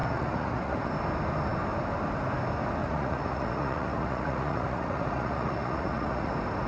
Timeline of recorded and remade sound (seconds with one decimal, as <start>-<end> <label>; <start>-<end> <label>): 0.0-0.9 remade; 0.9-2.8 recorded; 2.8-6.3 remade; 6.3-6.7 recorded